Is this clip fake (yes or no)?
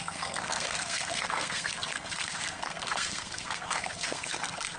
yes